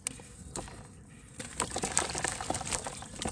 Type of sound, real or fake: real